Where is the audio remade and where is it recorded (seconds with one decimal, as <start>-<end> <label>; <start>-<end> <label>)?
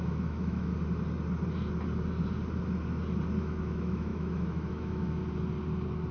0.0-0.7 remade; 0.7-3.4 recorded; 3.4-5.2 remade; 5.2-6.1 recorded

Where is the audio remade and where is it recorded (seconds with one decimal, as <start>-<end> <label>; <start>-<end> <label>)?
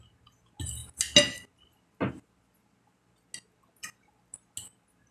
0.0-5.1 recorded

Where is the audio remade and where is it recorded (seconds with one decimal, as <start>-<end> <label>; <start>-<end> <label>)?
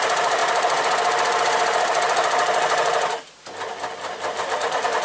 0.0-5.0 recorded